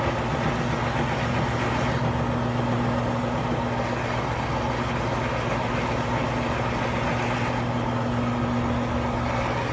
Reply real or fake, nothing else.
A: real